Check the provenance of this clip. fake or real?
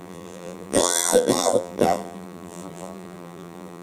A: fake